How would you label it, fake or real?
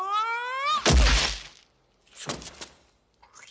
real